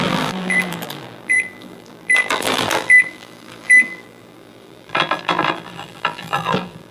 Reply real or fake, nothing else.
fake